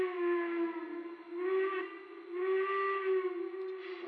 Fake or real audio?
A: real